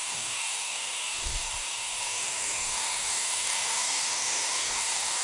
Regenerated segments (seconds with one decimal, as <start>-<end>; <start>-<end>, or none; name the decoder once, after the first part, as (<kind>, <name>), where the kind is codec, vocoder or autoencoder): 0.0-5.2 (codec, DAC)